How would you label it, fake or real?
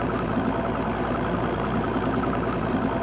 real